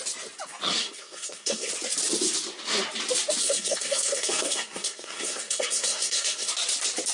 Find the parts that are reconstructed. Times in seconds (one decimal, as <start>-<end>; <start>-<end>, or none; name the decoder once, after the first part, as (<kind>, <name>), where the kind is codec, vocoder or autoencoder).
0.8-1.7 (codec, SNAC); 3.4-6.5